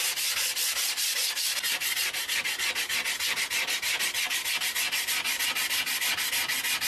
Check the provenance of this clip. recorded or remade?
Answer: recorded